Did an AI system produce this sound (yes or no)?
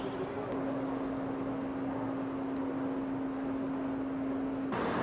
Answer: no